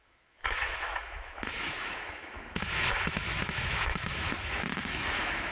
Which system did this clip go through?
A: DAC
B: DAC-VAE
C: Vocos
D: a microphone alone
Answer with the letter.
B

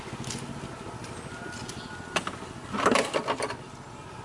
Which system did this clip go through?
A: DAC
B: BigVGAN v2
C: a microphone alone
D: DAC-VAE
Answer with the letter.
C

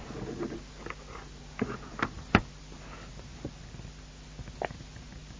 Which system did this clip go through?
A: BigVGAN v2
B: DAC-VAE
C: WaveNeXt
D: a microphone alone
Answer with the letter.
D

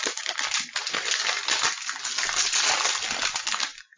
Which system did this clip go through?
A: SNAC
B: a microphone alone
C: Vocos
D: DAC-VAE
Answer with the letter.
B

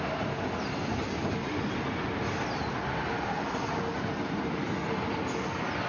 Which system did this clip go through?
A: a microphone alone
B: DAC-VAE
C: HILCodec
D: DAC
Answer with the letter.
A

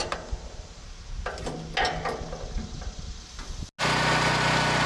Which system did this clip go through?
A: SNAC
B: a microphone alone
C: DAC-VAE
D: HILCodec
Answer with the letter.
B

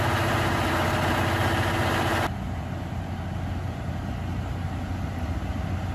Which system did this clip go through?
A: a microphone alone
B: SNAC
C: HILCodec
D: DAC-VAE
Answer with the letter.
A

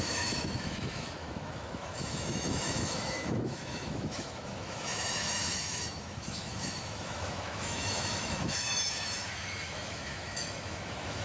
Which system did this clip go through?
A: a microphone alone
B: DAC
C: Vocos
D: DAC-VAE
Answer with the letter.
D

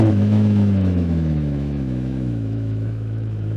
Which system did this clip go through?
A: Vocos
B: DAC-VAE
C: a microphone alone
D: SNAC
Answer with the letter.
B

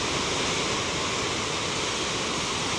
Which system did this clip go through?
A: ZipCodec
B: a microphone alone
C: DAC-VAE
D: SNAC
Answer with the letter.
B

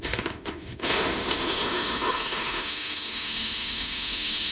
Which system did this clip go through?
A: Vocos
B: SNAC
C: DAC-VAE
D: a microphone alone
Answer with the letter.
C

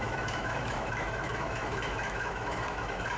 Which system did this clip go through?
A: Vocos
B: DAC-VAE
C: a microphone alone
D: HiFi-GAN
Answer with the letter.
B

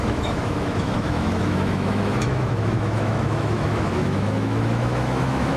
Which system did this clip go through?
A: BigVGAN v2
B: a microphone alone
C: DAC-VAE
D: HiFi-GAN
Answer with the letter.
C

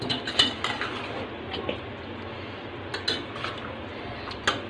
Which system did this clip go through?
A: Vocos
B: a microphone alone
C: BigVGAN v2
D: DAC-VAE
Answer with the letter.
B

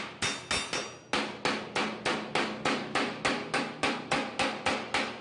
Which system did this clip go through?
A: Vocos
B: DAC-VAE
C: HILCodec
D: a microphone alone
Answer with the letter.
D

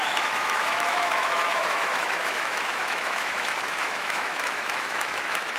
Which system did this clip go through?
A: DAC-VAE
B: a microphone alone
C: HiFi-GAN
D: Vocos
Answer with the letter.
A